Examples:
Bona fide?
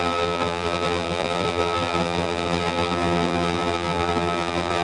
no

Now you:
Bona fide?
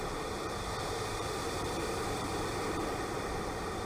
no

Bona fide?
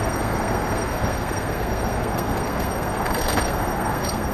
no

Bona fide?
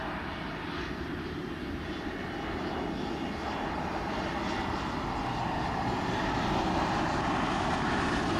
yes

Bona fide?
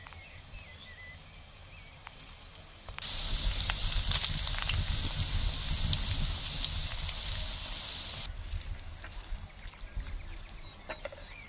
yes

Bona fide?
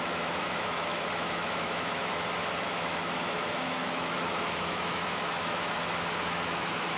no